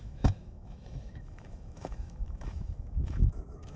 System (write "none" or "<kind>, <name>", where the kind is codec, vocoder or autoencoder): autoencoder, DAC-VAE